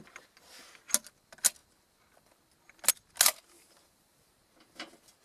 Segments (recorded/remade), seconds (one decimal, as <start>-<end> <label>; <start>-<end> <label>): 0.0-5.2 recorded